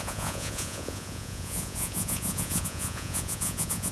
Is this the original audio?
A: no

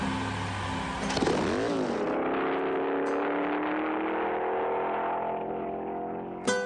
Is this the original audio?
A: yes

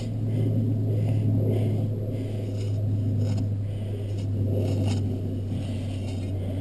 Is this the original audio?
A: yes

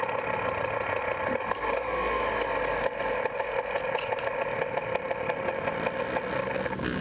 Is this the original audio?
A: yes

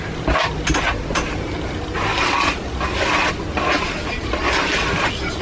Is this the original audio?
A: yes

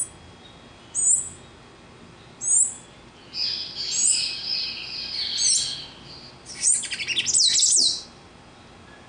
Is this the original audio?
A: yes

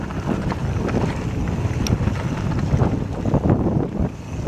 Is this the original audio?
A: yes